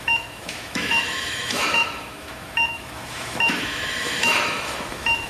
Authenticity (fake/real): fake